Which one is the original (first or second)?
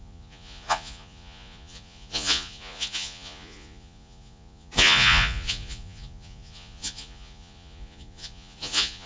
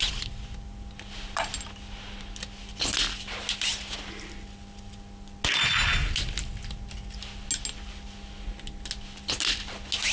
second